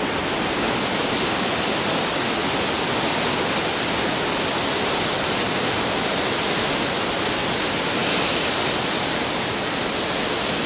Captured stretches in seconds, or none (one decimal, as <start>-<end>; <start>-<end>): 0.0-10.7